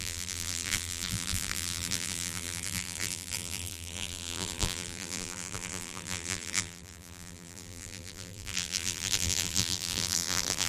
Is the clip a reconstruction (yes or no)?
yes